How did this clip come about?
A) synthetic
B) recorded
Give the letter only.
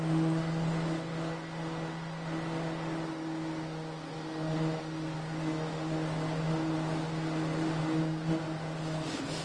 B